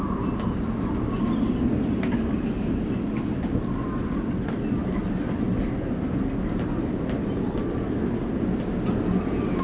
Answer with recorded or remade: recorded